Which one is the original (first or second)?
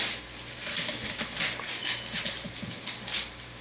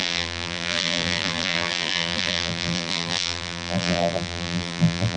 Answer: first